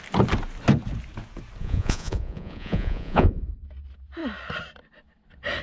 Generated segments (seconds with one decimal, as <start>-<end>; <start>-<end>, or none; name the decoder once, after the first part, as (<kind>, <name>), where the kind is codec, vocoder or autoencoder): 1.6-3.6 (vocoder, Vocos)